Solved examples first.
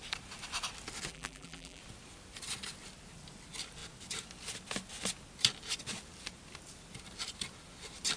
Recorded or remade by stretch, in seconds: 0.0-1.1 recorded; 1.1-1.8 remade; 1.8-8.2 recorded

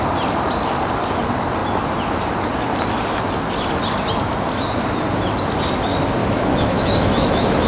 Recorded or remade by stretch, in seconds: 0.0-6.2 recorded; 6.2-7.7 remade

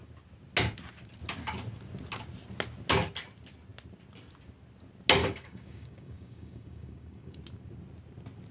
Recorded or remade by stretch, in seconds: 0.0-5.2 recorded; 5.2-7.4 remade; 7.4-8.5 recorded

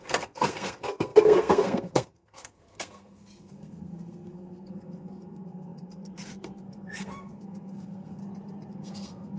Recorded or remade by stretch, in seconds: 0.0-8.2 remade; 8.2-8.7 recorded; 8.7-9.4 remade

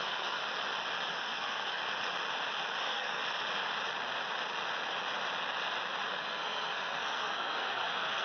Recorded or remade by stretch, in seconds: 0.0-0.4 remade; 0.4-1.1 recorded; 1.1-1.8 remade; 1.8-2.8 recorded; 2.8-3.2 remade; 3.2-6.1 recorded; 6.1-8.2 remade